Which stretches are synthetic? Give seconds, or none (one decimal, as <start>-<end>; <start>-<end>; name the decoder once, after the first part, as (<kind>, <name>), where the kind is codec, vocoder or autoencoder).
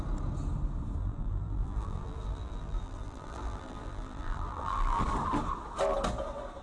1.0-5.0 (vocoder, BigVGAN v2)